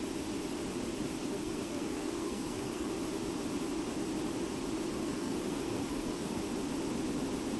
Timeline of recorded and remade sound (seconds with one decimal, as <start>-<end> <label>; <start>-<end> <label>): 0.0-1.2 recorded; 1.2-2.9 remade; 2.9-5.0 recorded; 5.0-6.4 remade; 6.4-7.6 recorded